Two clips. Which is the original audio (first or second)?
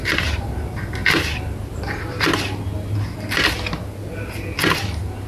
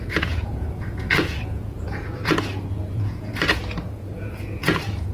first